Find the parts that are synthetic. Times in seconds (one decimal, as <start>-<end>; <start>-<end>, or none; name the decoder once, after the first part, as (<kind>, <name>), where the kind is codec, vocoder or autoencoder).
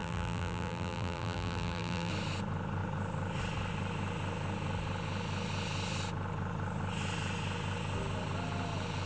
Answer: 0.0-2.1 (vocoder, BigVGAN v2)